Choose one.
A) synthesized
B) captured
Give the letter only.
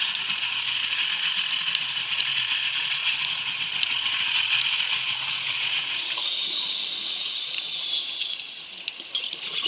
A